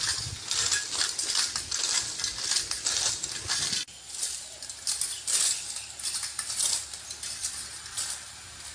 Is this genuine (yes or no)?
yes